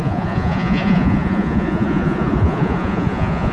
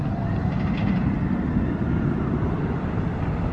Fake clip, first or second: first